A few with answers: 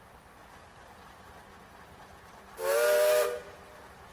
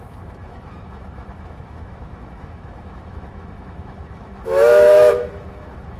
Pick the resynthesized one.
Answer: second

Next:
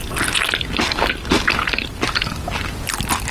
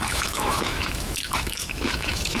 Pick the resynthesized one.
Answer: second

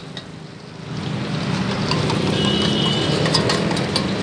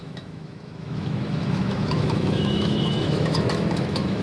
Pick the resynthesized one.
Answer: second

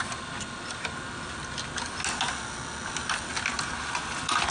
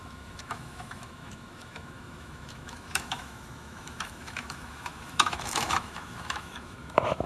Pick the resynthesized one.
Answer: second